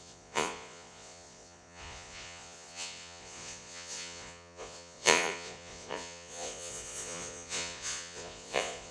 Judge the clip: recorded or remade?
remade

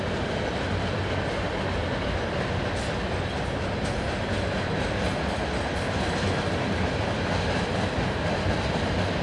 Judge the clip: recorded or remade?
recorded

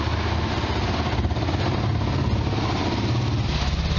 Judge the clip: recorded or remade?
recorded